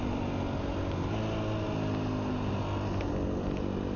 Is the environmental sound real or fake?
real